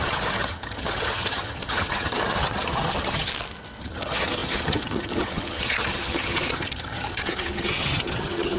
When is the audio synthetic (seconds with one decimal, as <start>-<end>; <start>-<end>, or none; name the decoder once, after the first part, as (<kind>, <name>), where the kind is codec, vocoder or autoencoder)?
0.0-3.3 (vocoder, HiFi-GAN); 3.8-8.6